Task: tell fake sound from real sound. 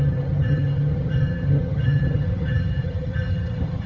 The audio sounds fake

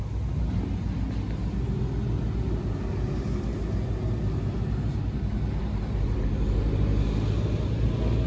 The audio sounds real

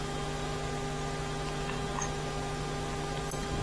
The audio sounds real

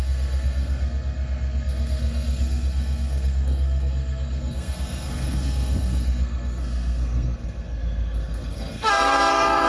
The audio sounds fake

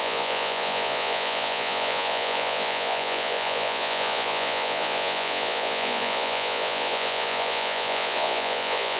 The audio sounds fake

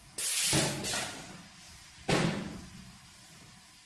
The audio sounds real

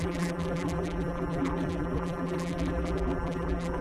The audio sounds fake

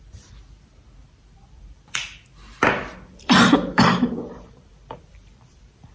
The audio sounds fake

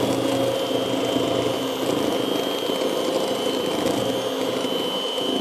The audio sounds real